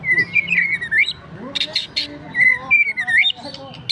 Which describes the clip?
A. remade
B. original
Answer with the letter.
B